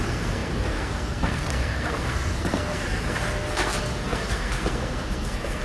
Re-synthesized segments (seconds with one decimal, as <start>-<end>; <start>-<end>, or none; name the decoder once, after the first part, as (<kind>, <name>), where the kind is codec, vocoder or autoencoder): 0.0-5.6 (codec, SNAC)